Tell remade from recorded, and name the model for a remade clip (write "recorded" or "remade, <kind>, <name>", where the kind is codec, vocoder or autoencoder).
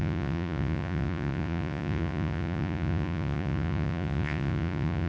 remade, vocoder, Vocos